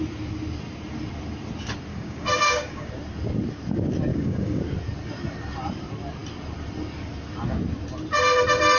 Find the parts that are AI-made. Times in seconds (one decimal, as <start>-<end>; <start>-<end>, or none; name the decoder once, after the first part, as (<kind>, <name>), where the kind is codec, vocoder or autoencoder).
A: 1.9-2.9 (codec, DAC); 4.1-4.6